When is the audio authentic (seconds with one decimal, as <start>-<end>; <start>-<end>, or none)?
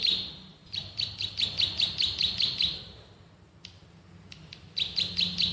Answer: 0.0-5.5